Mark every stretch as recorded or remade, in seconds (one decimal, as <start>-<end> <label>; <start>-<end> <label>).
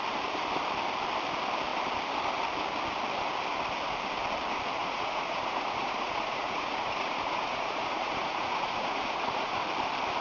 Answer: 0.0-4.8 recorded; 4.8-9.6 remade; 9.6-10.2 recorded